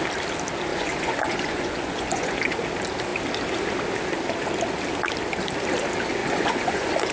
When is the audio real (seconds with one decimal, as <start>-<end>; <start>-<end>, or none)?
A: 0.0-0.7; 2.4-6.2